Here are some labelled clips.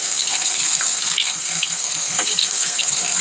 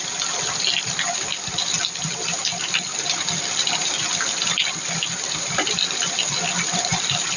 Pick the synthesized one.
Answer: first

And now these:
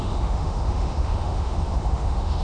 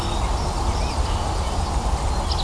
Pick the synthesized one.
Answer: first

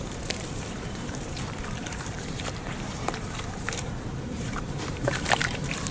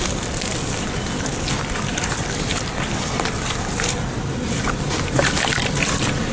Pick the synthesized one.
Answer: first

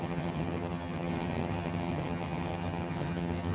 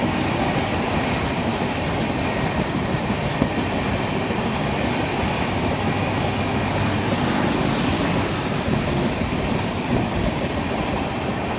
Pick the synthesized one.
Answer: first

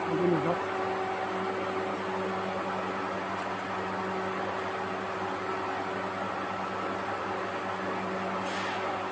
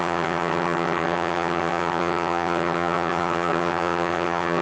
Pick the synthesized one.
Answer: second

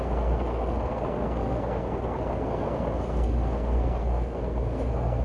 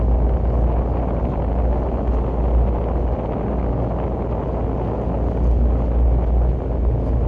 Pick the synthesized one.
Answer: first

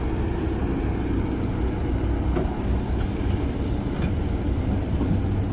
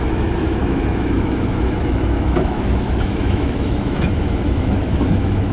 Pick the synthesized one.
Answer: second